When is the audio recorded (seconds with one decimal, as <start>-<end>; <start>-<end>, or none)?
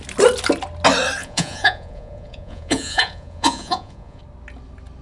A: 0.0-1.2; 4.2-5.0